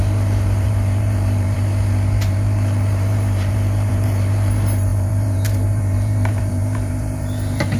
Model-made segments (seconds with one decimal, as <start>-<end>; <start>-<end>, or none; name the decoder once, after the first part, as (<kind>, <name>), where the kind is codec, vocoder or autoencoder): 0.0-7.8 (vocoder, BigVGAN v2)